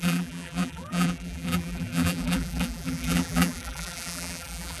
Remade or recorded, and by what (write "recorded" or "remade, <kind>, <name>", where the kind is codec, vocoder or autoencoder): remade, vocoder, BigVGAN v2